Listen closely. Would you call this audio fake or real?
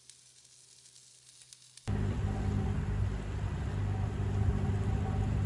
real